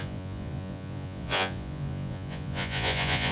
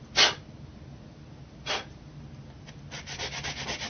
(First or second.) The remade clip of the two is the first